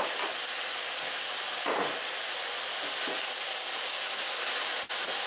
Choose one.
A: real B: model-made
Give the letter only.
A